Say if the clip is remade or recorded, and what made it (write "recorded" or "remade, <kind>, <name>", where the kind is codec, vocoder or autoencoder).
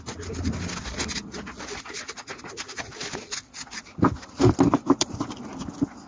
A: recorded